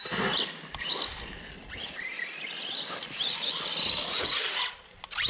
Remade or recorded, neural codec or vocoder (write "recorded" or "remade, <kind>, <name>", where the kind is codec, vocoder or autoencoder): recorded